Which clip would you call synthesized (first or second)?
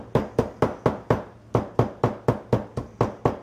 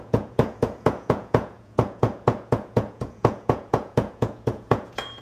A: second